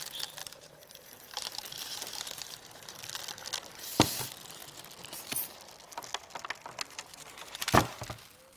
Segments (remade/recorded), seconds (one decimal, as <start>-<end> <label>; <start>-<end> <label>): 0.0-0.4 recorded; 0.4-3.0 remade; 3.0-7.1 recorded; 7.1-8.0 remade; 8.0-8.6 recorded

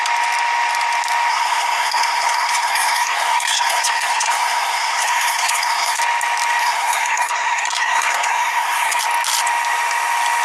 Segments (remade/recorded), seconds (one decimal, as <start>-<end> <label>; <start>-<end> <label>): 0.0-1.3 recorded; 1.3-6.0 remade; 6.0-6.6 recorded; 6.6-9.0 remade; 9.0-10.4 recorded

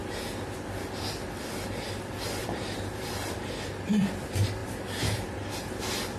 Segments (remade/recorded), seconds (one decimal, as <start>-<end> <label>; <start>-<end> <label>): 0.0-2.4 recorded; 2.4-3.3 remade; 3.3-4.6 recorded; 4.6-5.3 remade; 5.3-6.2 recorded

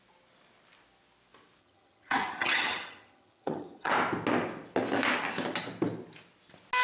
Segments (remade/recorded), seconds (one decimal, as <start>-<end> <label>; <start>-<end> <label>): 0.0-1.6 recorded; 1.6-3.9 remade; 3.9-6.8 recorded

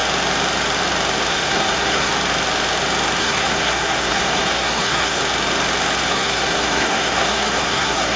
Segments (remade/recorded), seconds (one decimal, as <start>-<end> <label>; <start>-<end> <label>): 0.0-1.3 recorded; 1.3-2.1 remade; 2.1-3.2 recorded; 3.2-5.2 remade; 5.2-6.1 recorded; 6.1-8.2 remade

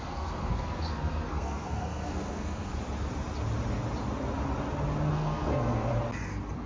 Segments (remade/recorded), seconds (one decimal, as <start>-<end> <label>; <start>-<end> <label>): 0.0-2.7 remade; 2.7-5.1 recorded; 5.1-5.9 remade; 5.9-6.7 recorded